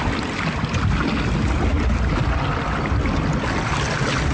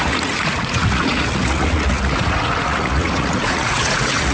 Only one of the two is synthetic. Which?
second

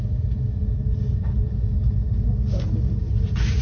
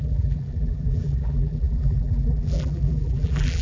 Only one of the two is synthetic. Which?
second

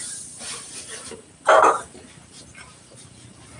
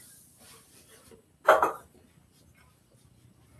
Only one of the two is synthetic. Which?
first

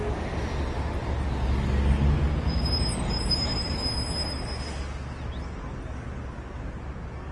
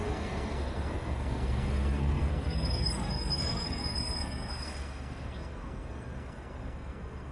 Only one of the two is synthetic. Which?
second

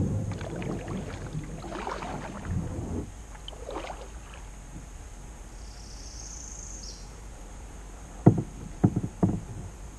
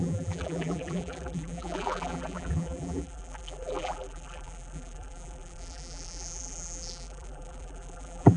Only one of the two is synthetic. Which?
second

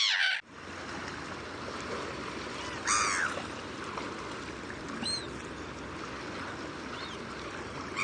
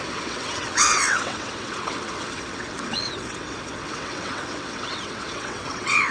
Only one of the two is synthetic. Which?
second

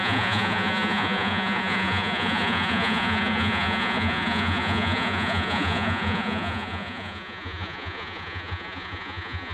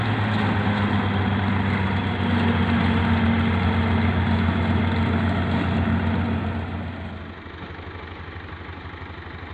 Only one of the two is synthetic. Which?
first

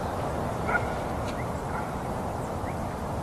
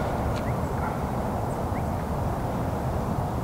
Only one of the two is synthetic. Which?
first